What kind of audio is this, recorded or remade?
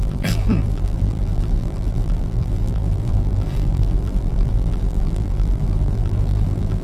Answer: remade